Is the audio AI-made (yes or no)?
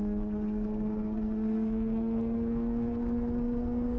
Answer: yes